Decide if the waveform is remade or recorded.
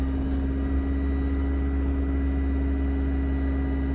recorded